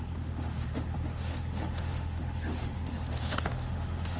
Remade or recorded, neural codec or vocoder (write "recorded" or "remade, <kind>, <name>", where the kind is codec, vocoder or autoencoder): remade, autoencoder, DAC-VAE